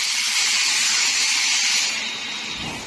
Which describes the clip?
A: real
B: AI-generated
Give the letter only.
A